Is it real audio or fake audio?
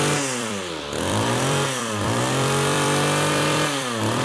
fake